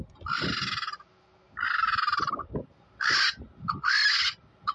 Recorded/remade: recorded